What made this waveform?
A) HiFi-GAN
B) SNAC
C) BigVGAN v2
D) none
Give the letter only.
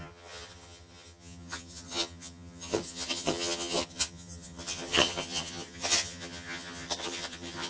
A